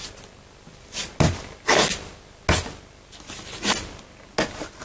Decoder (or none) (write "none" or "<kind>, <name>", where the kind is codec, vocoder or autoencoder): none